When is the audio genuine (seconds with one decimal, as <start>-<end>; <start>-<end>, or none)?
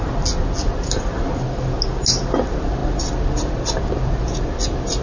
0.0-5.0